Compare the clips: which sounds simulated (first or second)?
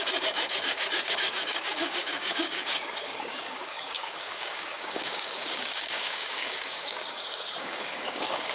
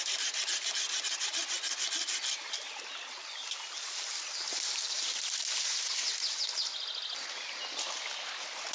first